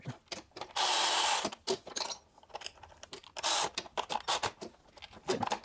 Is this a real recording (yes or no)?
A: yes